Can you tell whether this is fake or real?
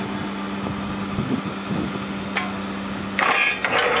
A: real